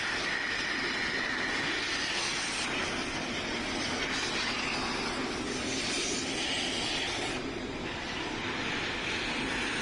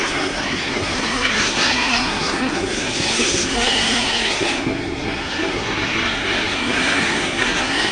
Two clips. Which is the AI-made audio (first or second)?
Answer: second